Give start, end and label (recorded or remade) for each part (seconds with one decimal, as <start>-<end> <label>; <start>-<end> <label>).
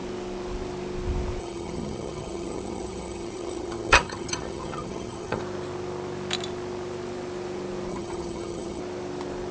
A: 0.0-1.4 recorded; 1.4-5.4 remade; 5.4-7.9 recorded; 7.9-8.8 remade; 8.8-9.5 recorded